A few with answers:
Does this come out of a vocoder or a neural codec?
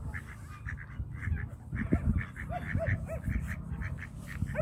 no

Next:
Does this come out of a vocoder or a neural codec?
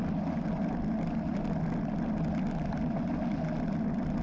no